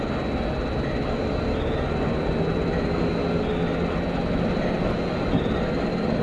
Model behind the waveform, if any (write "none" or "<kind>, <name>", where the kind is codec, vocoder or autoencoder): none